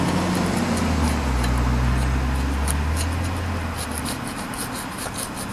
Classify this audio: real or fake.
real